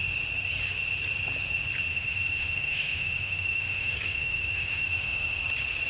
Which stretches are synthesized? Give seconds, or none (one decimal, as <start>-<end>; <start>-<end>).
1.9-5.4